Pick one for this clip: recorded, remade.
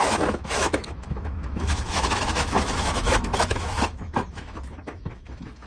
remade